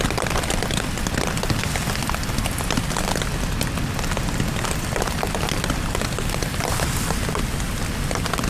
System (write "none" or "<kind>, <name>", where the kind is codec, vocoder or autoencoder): none